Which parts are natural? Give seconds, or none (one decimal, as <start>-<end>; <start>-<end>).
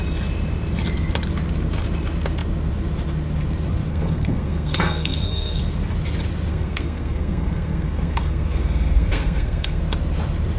0.0-3.9; 5.6-6.5; 9.8-10.6